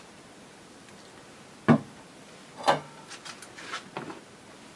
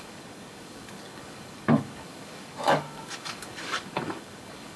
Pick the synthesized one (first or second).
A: second